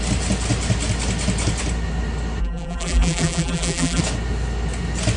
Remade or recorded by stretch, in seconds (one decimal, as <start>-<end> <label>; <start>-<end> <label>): 0.0-2.4 recorded; 2.4-4.0 remade; 4.0-5.2 recorded